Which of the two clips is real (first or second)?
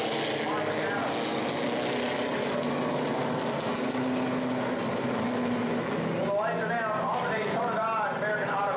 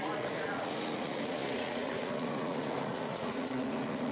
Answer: first